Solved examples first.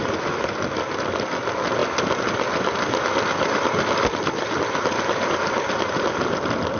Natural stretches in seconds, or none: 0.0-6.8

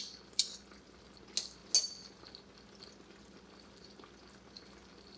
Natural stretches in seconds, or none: 0.0-5.2

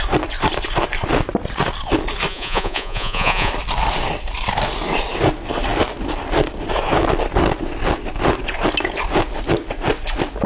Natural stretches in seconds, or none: 0.0-2.3; 3.5-10.5

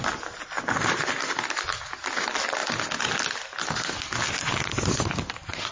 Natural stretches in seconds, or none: 0.0-5.7